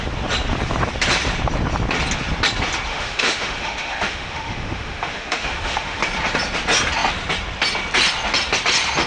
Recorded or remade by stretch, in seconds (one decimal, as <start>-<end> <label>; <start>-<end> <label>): 0.0-2.9 recorded; 2.9-6.0 remade; 6.0-9.1 recorded